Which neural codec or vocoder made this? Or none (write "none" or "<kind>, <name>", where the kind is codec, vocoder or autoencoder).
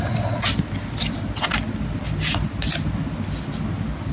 none